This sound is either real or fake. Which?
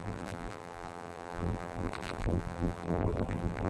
fake